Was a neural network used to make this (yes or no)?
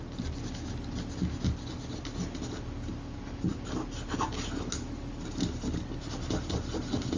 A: no